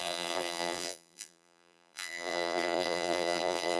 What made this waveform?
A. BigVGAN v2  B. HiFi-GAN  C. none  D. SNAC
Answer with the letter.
A